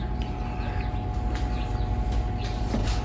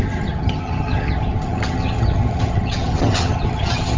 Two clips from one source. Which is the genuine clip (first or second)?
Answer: first